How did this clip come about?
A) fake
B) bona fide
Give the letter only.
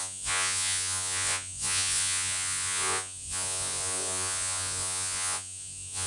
A